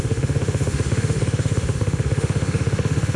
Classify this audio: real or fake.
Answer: fake